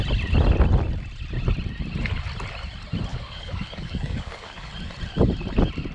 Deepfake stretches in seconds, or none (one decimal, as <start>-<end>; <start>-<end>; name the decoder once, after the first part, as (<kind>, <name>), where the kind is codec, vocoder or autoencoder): 3.1-4.7 (codec, DAC)